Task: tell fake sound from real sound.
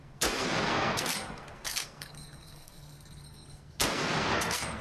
fake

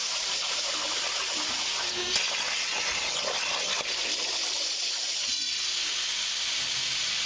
real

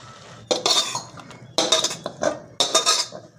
real